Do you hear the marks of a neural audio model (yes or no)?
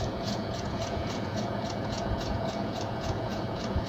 yes